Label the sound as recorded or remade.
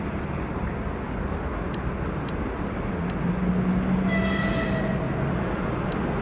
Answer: recorded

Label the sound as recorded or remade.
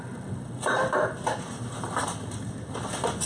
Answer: recorded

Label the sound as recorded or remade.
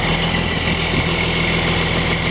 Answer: recorded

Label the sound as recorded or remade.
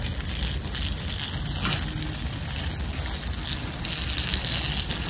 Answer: recorded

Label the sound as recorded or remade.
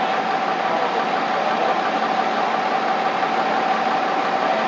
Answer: recorded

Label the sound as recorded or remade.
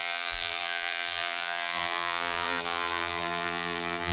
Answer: remade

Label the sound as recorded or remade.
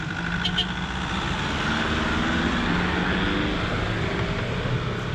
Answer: recorded